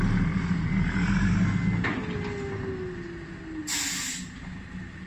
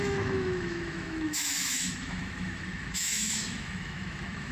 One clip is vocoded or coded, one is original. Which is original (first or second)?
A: first